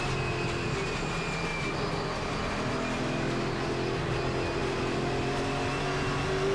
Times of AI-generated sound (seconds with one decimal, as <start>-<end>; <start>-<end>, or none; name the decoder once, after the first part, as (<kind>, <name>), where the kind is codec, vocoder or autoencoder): none